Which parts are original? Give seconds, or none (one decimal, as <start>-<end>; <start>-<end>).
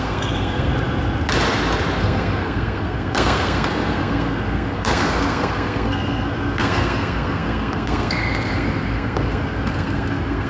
0.7-2.0